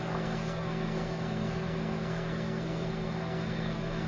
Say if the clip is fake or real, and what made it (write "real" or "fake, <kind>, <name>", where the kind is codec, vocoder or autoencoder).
fake, codec, SNAC